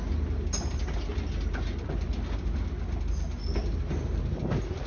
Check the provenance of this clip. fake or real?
real